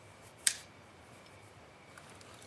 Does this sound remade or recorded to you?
remade